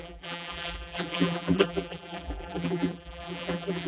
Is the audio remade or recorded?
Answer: remade